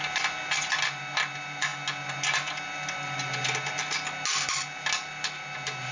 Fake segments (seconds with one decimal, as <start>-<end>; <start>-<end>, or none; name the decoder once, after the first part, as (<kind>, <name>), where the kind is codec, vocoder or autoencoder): none